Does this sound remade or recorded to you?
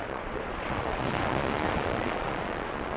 remade